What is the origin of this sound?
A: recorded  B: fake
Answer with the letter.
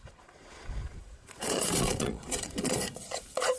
B